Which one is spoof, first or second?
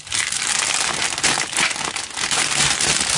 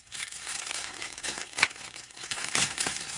second